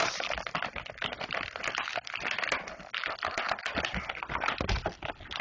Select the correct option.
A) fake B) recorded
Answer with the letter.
B